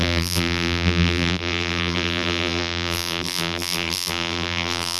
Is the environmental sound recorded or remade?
remade